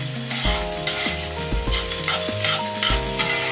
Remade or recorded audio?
recorded